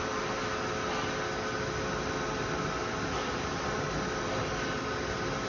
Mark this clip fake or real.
real